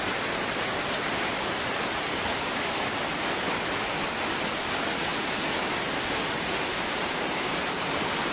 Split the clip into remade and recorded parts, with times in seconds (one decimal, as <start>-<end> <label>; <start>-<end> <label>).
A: 0.0-2.3 remade; 2.3-6.3 recorded; 6.3-8.3 remade